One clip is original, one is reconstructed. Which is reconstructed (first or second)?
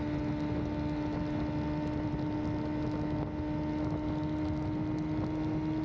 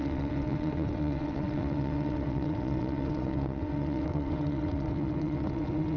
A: second